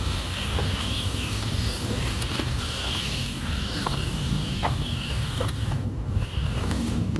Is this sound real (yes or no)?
no